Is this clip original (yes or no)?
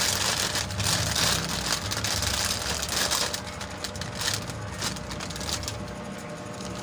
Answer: yes